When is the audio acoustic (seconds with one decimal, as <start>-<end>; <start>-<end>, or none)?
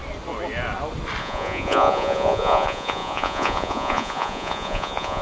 0.0-1.2